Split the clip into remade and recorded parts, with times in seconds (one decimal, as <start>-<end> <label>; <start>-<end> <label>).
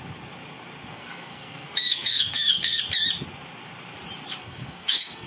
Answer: 0.0-0.9 recorded; 0.9-2.8 remade; 2.8-4.4 recorded; 4.4-5.3 remade